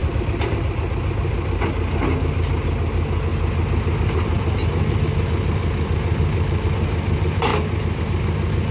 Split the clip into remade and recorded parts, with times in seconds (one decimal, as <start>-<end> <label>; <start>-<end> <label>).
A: 0.0-0.5 remade; 0.5-8.7 recorded

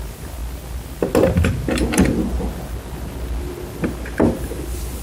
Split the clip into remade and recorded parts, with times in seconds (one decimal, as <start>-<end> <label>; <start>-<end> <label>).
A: 0.0-0.4 remade; 0.4-3.4 recorded; 3.4-5.0 remade